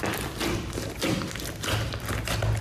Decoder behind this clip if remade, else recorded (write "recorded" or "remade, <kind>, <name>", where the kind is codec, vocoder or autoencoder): recorded